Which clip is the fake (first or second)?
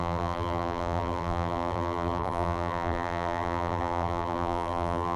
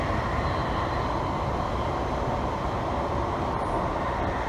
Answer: first